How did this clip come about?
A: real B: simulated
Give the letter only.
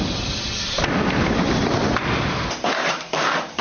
A